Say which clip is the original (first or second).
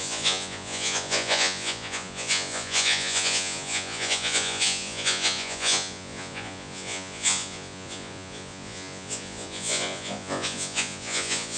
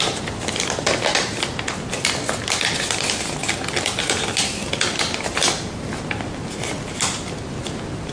second